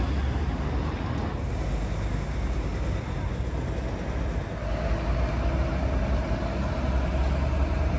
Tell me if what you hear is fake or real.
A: real